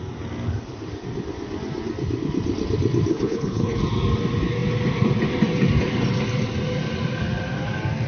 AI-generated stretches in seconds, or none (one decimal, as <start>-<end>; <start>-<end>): 3.1-3.8